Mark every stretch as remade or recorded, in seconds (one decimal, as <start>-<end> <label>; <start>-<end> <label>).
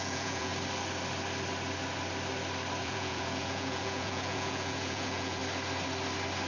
0.0-0.5 remade; 0.5-2.8 recorded; 2.8-5.4 remade; 5.4-6.5 recorded